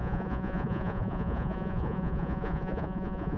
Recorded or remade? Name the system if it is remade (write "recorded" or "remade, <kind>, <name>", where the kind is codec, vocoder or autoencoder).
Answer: remade, vocoder, Vocos